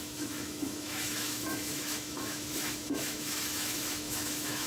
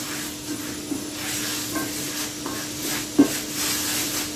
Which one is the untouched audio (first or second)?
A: second